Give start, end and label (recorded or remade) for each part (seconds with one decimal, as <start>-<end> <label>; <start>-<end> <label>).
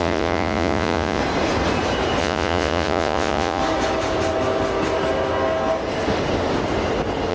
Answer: 0.0-1.2 remade; 1.2-2.2 recorded; 2.2-3.6 remade; 3.6-7.3 recorded